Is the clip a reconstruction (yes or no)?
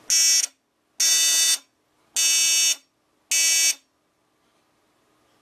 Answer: no